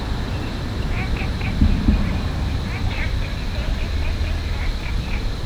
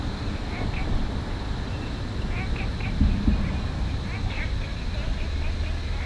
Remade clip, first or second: first